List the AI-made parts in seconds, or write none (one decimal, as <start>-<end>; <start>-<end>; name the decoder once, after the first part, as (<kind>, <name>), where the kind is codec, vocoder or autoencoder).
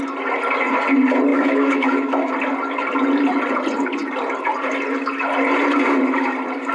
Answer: 1.3-2.3 (autoencoder, DAC-VAE)